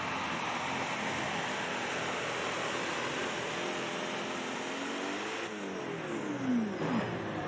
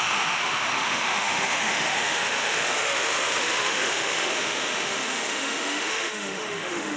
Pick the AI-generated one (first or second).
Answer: second